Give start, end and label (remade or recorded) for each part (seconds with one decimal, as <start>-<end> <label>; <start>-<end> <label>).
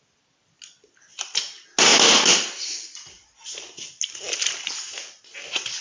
0.0-5.8 recorded